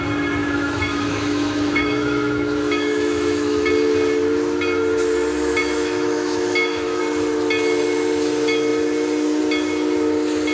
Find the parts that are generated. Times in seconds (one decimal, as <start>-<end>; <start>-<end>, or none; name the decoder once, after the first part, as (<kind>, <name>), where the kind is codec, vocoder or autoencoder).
0.4-3.7 (autoencoder, DAC-VAE); 5.6-7.0